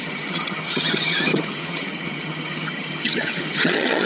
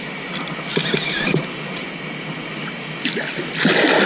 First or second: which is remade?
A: first